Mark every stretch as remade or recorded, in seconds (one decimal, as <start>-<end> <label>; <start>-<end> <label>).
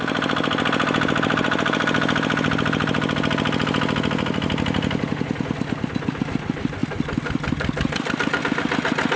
0.0-9.2 recorded